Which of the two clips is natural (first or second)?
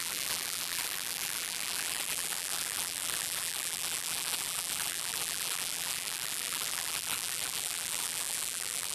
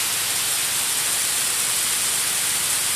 second